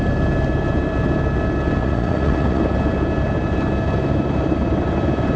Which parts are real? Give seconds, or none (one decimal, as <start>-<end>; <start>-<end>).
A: 0.0-1.8; 2.6-5.4